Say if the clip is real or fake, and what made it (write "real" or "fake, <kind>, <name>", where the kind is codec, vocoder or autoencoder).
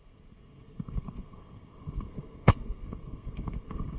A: fake, codec, SNAC